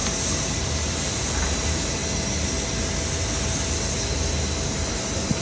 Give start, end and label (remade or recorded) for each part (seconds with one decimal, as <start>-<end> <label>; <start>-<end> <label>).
0.0-0.5 recorded; 0.5-2.0 remade; 2.0-5.4 recorded

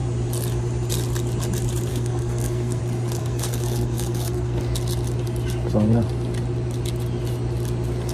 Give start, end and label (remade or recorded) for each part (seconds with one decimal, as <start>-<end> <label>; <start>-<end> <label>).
0.0-1.9 recorded; 1.9-2.8 remade; 2.8-3.2 recorded; 3.2-4.6 remade; 4.6-8.1 recorded